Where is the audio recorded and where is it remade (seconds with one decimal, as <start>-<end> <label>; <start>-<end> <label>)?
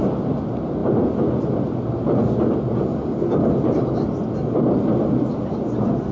0.0-6.1 recorded